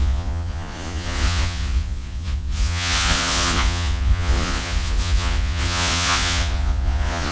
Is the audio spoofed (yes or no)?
yes